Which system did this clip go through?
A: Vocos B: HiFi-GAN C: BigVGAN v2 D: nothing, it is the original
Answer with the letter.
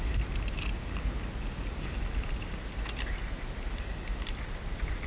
D